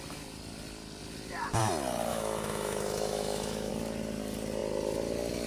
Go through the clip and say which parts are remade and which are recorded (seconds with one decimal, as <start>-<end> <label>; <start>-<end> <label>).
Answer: 0.0-2.1 recorded; 2.1-3.7 remade; 3.7-5.5 recorded

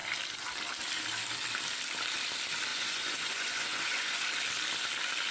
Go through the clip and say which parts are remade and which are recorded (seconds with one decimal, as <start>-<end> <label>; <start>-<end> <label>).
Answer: 0.0-2.7 recorded; 2.7-4.2 remade; 4.2-5.3 recorded

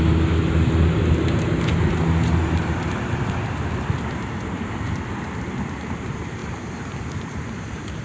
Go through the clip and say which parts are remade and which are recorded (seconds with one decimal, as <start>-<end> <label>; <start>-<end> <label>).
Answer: 0.0-8.0 recorded

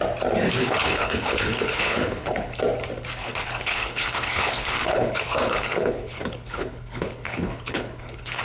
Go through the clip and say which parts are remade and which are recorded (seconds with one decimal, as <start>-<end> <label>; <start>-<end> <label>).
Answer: 0.0-0.6 recorded; 0.6-2.6 remade; 2.6-3.2 recorded; 3.2-8.4 remade